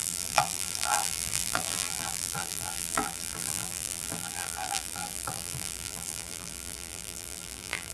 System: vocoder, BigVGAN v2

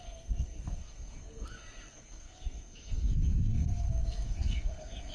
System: codec, SNAC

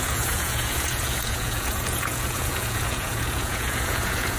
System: vocoder, Vocos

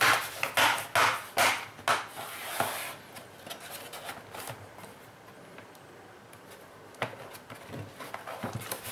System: none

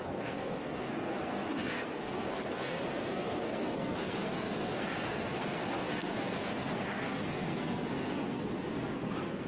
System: codec, SNAC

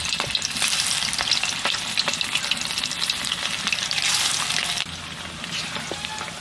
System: vocoder, BigVGAN v2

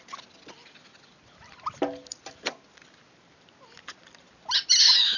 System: none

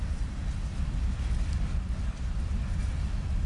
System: none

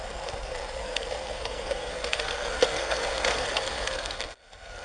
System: codec, SNAC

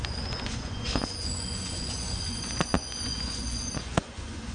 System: vocoder, Vocos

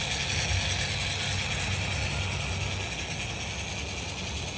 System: none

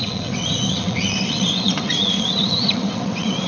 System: vocoder, WaveNeXt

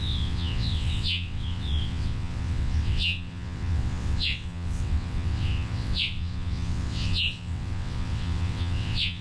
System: vocoder, WaveNeXt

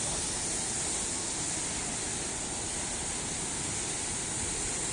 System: none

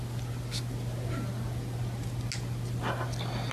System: none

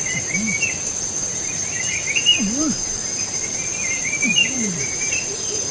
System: vocoder, BigVGAN v2